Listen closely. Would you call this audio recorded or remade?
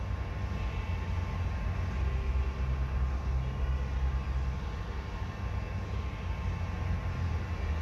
recorded